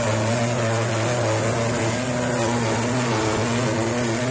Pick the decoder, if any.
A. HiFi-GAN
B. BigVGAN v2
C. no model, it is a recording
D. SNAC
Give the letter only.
C